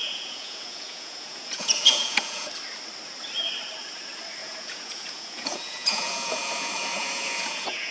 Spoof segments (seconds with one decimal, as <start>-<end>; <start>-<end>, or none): 0.0-2.5; 4.4-7.9